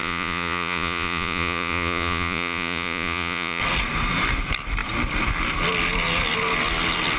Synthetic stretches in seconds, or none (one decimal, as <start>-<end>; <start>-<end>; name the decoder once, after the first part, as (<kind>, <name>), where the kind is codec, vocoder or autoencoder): 0.0-3.6 (vocoder, Vocos)